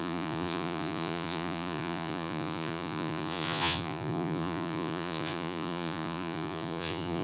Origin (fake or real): fake